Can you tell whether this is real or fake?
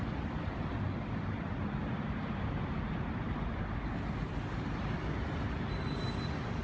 fake